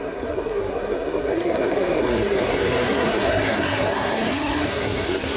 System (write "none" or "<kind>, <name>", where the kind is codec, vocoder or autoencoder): codec, SNAC